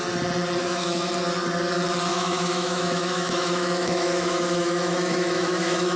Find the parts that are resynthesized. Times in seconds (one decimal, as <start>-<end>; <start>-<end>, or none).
0.6-1.1; 2.1-6.0